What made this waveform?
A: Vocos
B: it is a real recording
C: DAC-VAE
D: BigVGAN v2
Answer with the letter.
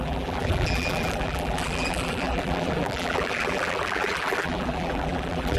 D